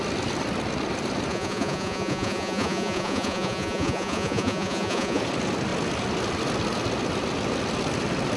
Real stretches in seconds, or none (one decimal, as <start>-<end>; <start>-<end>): 0.0-1.3; 5.2-8.4